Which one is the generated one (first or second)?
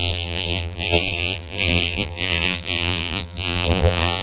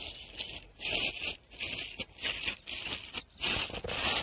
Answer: first